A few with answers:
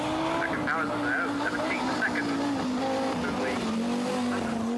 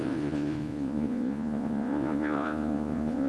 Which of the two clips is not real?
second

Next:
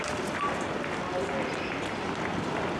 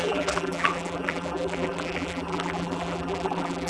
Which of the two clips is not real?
second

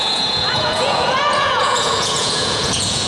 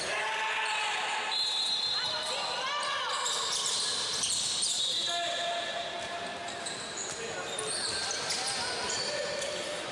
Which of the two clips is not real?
first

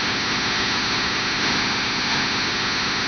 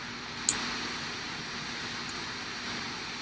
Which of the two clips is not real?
first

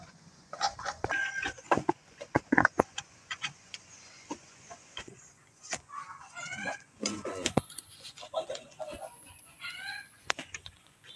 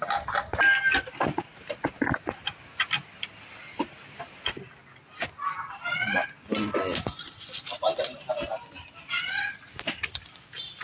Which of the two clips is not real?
first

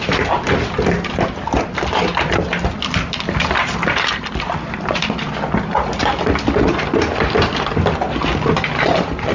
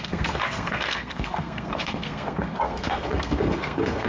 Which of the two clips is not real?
second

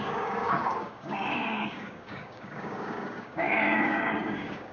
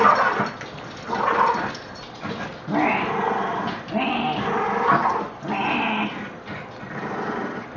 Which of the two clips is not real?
first